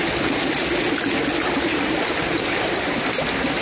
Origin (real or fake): real